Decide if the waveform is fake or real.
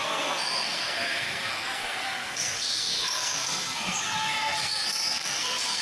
fake